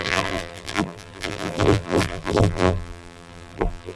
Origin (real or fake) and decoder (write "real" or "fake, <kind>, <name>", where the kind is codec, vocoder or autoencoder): fake, vocoder, BigVGAN v2